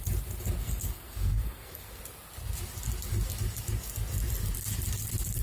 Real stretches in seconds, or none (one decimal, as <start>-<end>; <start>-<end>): 0.0-0.6; 2.0-5.4